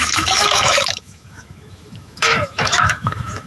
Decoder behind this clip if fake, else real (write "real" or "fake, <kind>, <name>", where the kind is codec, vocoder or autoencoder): fake, autoencoder, DAC-VAE